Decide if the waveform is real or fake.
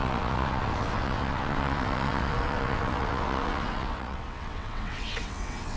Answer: fake